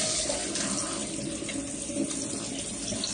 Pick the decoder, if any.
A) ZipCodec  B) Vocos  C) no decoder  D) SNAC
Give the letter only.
C